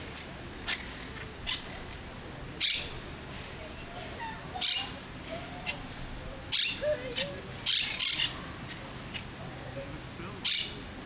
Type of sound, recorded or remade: recorded